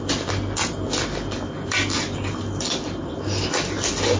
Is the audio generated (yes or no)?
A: no